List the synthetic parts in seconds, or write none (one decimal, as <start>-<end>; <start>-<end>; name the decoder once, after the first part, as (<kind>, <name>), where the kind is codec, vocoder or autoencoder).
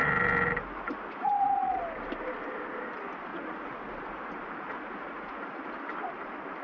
1.2-1.8 (vocoder, Vocos); 3.3-5.6